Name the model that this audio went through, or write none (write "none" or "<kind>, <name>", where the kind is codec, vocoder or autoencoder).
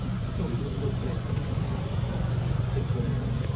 vocoder, Vocos